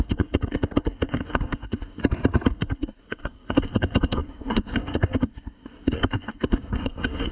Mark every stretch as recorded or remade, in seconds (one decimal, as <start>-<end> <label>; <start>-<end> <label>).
0.0-2.0 remade; 2.0-2.5 recorded; 2.5-7.3 remade